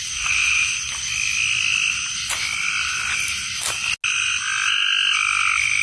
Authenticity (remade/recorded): recorded